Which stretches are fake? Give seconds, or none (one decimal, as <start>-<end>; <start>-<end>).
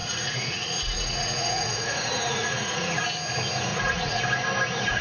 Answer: 0.0-3.0; 3.7-4.2